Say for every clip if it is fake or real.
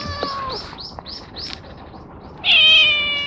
real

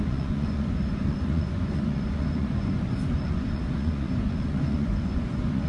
fake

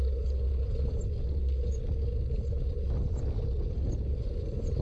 real